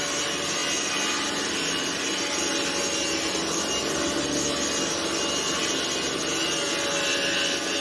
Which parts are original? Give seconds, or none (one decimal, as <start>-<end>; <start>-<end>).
0.0-7.8